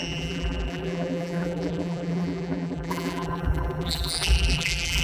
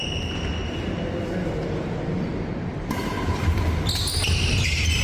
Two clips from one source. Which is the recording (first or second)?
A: second